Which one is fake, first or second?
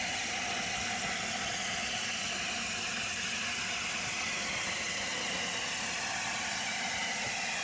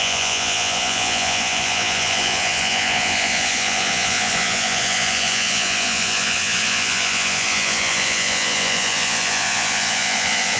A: second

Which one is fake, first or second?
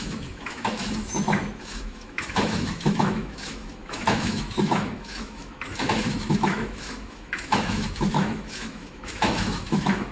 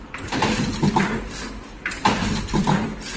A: first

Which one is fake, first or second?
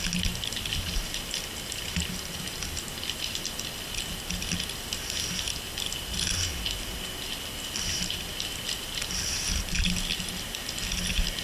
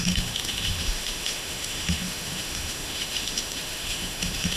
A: second